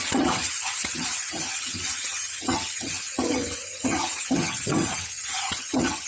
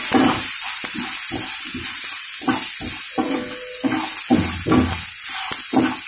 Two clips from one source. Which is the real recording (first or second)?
second